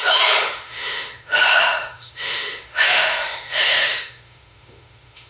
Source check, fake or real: fake